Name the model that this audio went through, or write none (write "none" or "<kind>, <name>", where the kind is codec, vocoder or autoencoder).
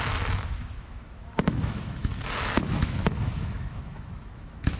autoencoder, DAC-VAE